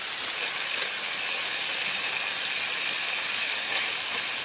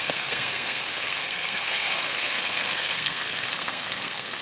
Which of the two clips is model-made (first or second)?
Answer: second